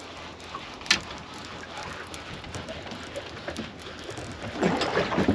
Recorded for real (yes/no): yes